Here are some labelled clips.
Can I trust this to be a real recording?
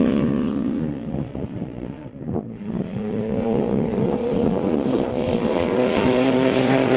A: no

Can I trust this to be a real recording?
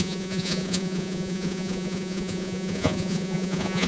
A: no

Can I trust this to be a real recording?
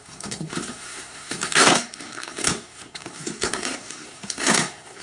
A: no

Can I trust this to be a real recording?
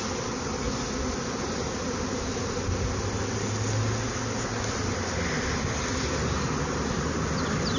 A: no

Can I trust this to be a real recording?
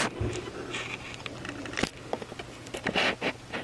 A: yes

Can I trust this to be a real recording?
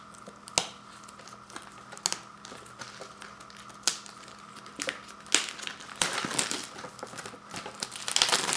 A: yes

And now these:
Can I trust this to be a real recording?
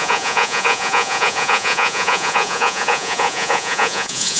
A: no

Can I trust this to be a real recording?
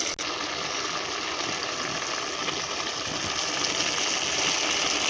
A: yes